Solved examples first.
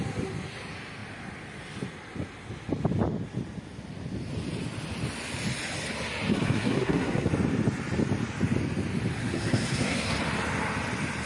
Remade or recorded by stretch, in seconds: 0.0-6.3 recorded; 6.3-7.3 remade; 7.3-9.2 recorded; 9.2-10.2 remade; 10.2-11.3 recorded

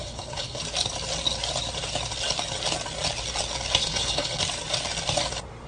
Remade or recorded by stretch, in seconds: 0.0-0.6 remade; 0.6-3.8 recorded; 3.8-4.4 remade; 4.4-5.7 recorded

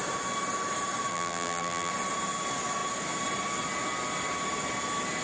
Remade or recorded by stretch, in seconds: 0.0-1.1 recorded; 1.1-1.9 remade; 1.9-5.2 recorded

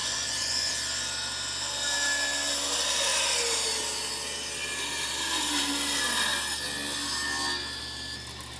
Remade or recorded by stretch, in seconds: 0.0-0.7 remade; 0.7-8.6 recorded

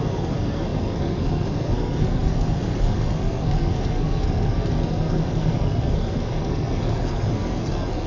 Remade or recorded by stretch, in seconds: 0.0-8.1 remade

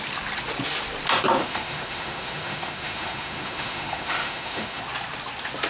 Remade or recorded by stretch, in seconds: 0.0-1.4 recorded; 1.4-4.8 remade; 4.8-5.7 recorded